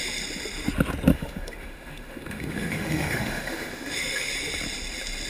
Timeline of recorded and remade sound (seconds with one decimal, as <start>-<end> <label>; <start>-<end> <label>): 0.0-1.1 recorded; 1.1-4.3 remade; 4.3-5.3 recorded

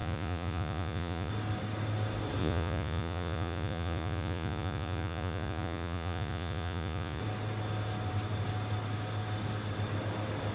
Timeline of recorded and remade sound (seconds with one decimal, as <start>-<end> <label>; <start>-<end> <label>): 0.0-1.3 remade; 1.3-2.4 recorded; 2.4-7.2 remade; 7.2-10.5 recorded